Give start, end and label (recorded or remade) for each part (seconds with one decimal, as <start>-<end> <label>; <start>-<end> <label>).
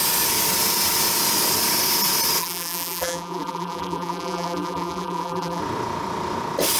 0.0-2.4 recorded; 2.4-5.6 remade; 5.6-6.8 recorded